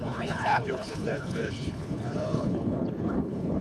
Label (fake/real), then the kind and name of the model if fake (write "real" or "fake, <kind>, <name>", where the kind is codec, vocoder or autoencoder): fake, codec, HILCodec